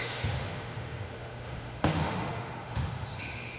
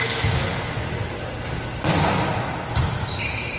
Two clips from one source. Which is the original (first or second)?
second